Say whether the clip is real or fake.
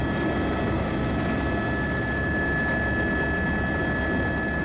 real